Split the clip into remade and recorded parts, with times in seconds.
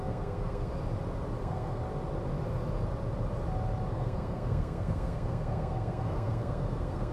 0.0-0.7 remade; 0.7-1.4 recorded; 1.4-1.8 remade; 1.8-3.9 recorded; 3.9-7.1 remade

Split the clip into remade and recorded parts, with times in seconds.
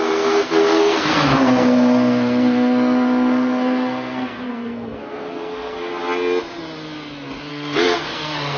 0.0-5.9 remade; 5.9-7.5 recorded; 7.5-8.6 remade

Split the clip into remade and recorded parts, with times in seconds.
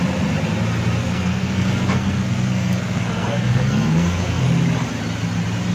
0.0-1.0 recorded; 1.0-4.4 remade; 4.4-5.7 recorded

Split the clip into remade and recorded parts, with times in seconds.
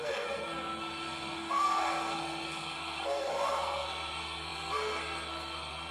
0.0-5.9 remade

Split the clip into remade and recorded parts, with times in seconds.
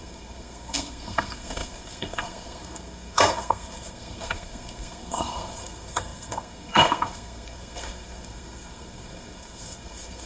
0.0-10.3 remade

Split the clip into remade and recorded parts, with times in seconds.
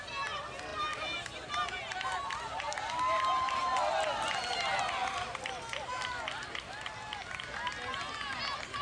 0.0-8.8 recorded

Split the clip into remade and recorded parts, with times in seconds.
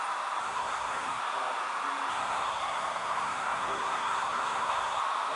0.0-0.4 recorded; 0.4-1.2 remade; 1.2-2.1 recorded; 2.1-5.0 remade; 5.0-5.4 recorded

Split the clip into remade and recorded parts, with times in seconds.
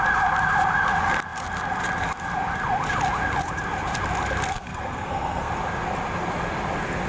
0.0-4.5 recorded; 4.5-5.5 remade; 5.5-7.1 recorded